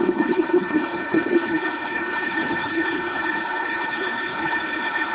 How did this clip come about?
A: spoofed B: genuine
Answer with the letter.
A